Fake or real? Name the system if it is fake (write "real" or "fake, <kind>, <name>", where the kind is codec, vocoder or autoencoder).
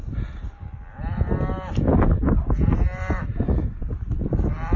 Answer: real